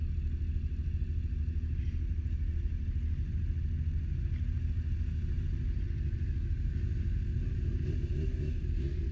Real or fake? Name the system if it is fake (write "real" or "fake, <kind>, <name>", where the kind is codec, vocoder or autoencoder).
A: real